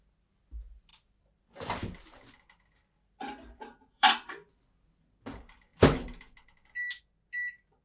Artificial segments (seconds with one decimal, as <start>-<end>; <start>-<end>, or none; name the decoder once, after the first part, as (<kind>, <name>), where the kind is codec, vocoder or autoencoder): 0.9-1.8 (vocoder, BigVGAN v2); 3.9-4.5